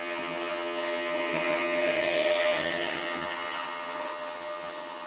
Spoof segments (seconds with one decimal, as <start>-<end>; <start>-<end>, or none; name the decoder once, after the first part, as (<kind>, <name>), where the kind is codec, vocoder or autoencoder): 0.0-5.1 (vocoder, HiFi-GAN)